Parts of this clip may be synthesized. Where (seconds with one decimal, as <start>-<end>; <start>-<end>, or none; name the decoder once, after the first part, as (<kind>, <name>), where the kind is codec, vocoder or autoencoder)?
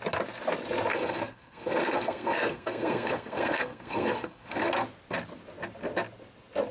0.9-4.7 (codec, SNAC)